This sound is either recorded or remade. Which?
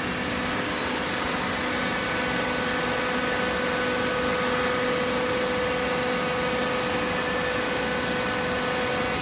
recorded